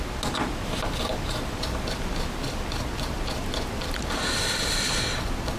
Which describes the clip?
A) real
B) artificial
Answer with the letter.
A